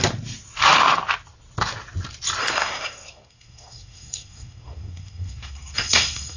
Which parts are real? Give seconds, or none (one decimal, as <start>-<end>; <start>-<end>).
0.0-2.4